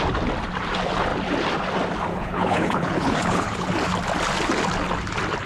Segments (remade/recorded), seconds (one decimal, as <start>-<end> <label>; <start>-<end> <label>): 0.0-2.1 recorded; 2.1-3.7 remade; 3.7-5.5 recorded